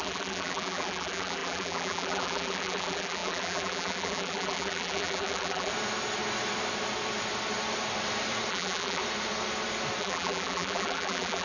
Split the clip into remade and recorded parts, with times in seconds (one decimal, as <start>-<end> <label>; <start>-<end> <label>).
0.0-5.7 remade; 5.7-8.5 recorded; 8.5-9.0 remade; 9.0-10.0 recorded; 10.0-11.4 remade